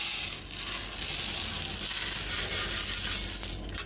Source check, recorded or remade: recorded